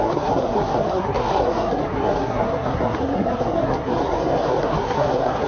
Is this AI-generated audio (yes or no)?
yes